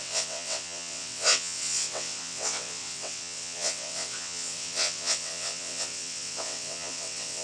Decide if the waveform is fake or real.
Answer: fake